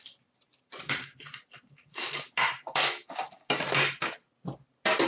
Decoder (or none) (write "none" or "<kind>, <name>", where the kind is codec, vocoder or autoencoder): none